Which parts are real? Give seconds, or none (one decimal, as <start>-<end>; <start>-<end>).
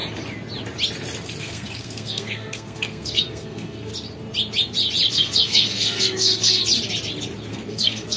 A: 0.0-1.4; 3.9-5.1; 6.6-7.5